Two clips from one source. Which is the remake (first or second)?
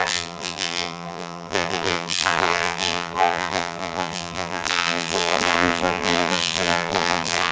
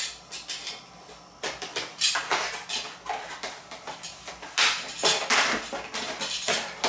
first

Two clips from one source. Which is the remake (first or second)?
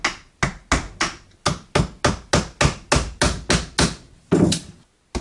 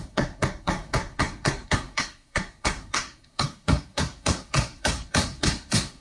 second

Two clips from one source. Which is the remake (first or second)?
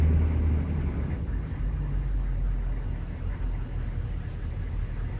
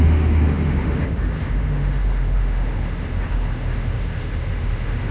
second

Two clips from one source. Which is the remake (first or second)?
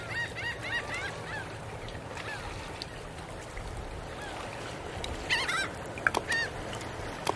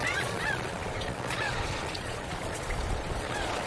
second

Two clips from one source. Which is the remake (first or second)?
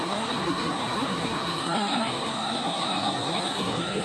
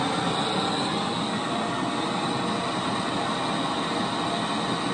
first